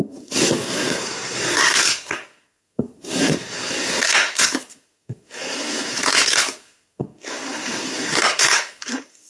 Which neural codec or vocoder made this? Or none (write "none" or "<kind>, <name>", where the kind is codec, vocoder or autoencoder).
codec, SNAC